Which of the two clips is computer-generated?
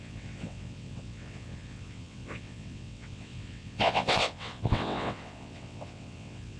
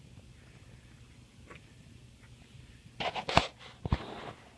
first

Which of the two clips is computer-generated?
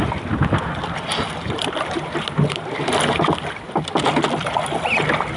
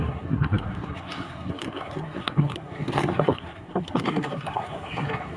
second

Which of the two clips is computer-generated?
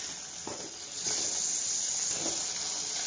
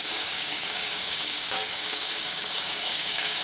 second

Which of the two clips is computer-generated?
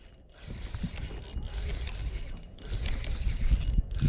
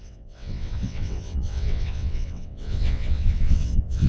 second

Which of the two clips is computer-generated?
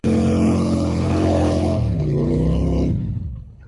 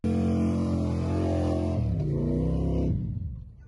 first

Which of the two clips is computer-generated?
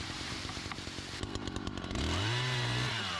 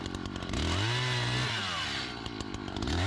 first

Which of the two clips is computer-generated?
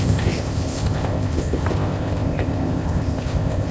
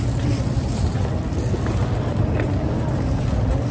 first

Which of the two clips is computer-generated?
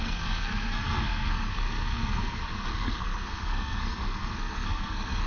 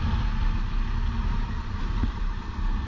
first